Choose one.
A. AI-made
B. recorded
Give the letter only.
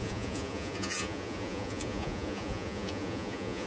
A